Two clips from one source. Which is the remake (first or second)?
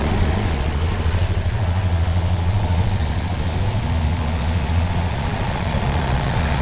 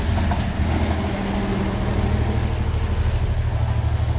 first